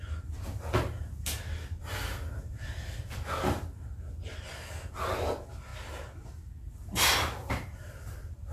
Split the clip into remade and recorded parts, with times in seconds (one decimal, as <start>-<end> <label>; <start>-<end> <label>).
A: 0.0-8.5 recorded